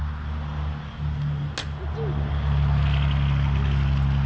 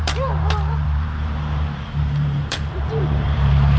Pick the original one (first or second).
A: first